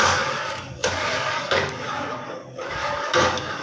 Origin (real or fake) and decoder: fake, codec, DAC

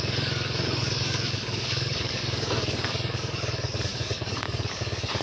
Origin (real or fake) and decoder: fake, codec, DAC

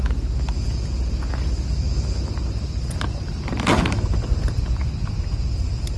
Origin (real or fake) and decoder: real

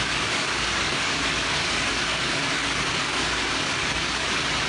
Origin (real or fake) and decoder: fake, codec, DAC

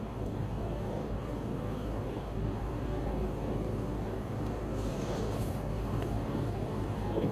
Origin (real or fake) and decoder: fake, codec, DAC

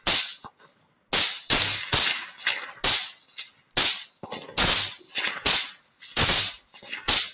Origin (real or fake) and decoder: real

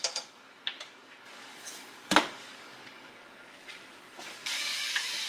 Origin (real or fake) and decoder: fake, codec, DAC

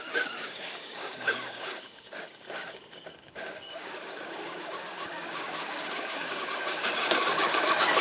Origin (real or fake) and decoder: fake, codec, DAC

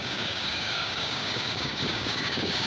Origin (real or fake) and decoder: fake, codec, DAC